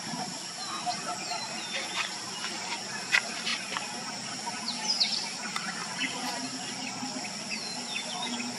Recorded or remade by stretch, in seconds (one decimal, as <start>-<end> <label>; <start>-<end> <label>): 0.0-5.8 recorded; 5.8-6.3 remade; 6.3-8.6 recorded